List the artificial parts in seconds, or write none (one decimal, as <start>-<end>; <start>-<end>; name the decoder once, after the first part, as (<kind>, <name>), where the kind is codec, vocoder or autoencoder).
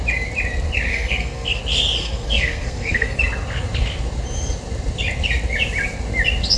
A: 0.9-1.6 (codec, SNAC); 2.0-3.2